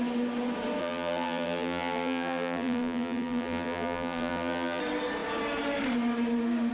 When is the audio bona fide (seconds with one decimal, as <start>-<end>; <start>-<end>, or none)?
0.0-0.8; 4.8-6.7